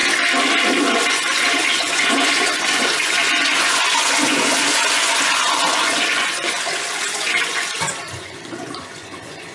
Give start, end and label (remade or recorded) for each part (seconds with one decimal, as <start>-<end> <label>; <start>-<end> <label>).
0.0-0.8 recorded; 0.8-9.5 remade